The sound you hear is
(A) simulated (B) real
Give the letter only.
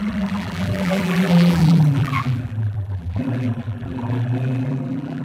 A